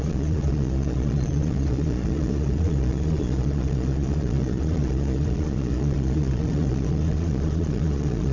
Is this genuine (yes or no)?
no